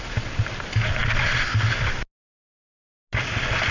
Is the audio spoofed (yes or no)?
no